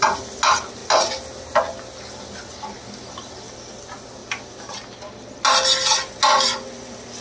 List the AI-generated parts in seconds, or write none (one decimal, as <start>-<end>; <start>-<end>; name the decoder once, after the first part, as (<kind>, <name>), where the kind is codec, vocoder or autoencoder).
none